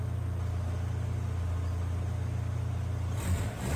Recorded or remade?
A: recorded